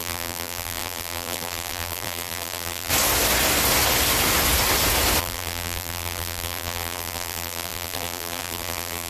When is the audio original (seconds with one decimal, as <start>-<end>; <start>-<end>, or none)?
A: 2.9-5.2